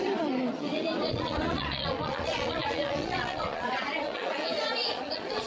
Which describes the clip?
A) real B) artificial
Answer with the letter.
B